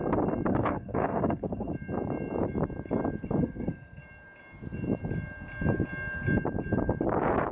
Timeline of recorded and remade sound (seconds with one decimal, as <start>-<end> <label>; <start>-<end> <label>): 0.0-0.5 recorded; 0.5-1.7 remade; 1.7-3.4 recorded; 3.4-4.0 remade; 4.0-7.5 recorded